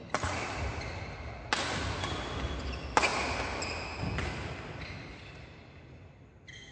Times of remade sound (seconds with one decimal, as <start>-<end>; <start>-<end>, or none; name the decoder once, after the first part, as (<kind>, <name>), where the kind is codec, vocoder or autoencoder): none